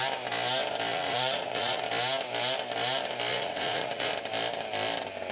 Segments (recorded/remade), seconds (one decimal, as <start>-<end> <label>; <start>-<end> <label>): 0.0-0.9 recorded; 0.9-1.8 remade; 1.8-3.3 recorded; 3.3-4.1 remade; 4.1-5.3 recorded